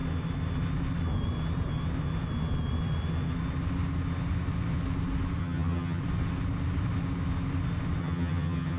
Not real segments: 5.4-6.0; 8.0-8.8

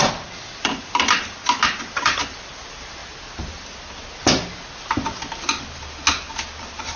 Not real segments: 0.0-1.4; 1.9-3.0; 6.6-7.0

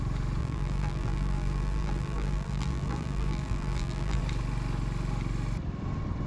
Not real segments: 0.4-4.2

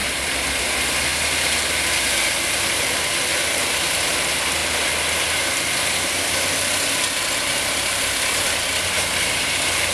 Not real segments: 0.0-0.6; 4.6-8.8

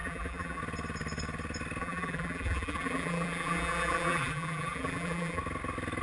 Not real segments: 0.0-0.6; 1.8-5.4